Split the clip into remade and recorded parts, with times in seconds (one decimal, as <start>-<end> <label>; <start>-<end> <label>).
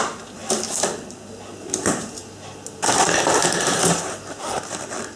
0.0-5.2 recorded